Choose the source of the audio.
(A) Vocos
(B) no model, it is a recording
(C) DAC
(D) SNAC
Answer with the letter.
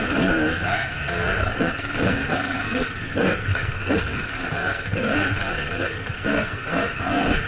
D